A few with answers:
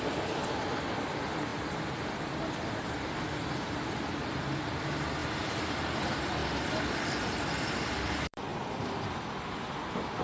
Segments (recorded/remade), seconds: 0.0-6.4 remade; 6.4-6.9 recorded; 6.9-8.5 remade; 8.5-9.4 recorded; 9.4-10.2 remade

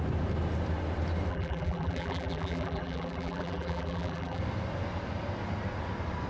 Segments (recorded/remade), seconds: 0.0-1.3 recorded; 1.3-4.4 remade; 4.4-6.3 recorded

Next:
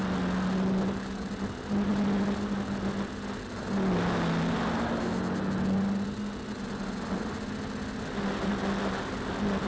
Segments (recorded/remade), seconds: 0.0-9.7 recorded

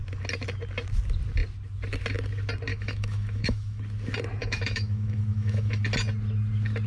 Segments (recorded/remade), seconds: 0.0-2.7 recorded; 2.7-3.8 remade; 3.8-4.4 recorded; 4.4-5.8 remade; 5.8-6.9 recorded

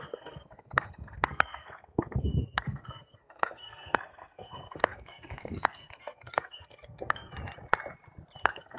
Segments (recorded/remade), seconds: 0.0-7.3 remade; 7.3-8.4 recorded; 8.4-8.8 remade

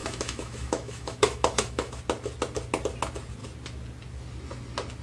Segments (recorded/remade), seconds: 0.0-2.0 remade; 2.0-5.0 recorded

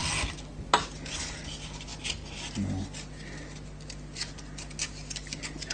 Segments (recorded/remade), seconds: 0.0-5.7 recorded

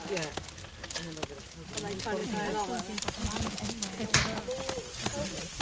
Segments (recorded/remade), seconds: 0.0-5.6 recorded